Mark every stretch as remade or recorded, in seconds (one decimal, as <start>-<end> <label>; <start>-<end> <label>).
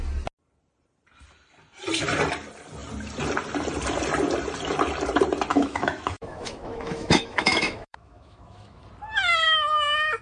0.0-5.5 recorded; 5.5-8.8 remade; 8.8-10.2 recorded